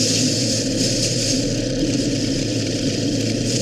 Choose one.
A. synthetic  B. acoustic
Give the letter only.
B